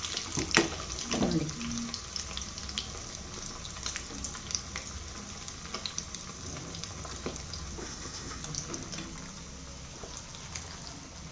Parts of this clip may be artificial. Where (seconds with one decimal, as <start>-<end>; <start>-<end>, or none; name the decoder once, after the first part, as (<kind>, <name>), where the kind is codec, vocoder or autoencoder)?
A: 7.8-8.4 (codec, SNAC)